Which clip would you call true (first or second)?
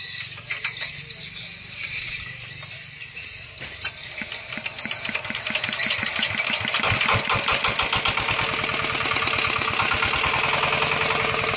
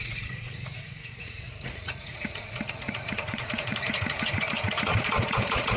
first